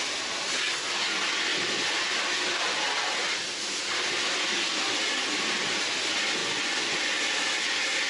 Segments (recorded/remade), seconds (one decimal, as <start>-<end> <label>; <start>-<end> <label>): 0.0-6.4 recorded; 6.4-7.0 remade; 7.0-8.1 recorded